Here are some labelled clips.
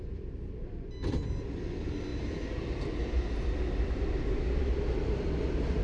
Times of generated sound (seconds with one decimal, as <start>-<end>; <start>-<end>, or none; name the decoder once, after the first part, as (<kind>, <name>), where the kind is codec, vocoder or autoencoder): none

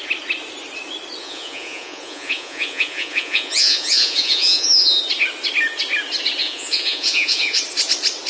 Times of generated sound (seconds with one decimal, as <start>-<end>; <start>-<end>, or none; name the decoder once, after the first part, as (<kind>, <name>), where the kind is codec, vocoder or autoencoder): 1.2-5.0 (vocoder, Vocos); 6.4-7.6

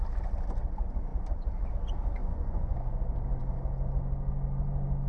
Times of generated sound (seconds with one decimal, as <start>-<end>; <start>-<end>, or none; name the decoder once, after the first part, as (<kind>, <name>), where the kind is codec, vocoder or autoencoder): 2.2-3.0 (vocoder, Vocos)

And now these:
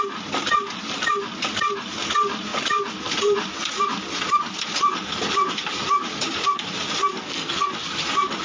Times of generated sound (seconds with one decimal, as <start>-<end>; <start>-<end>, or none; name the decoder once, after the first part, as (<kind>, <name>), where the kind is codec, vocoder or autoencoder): 7.2-7.7 (codec, SNAC)